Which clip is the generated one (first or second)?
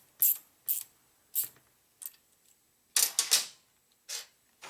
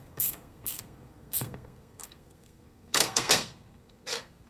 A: second